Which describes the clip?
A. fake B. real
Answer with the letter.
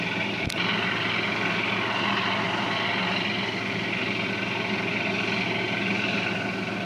B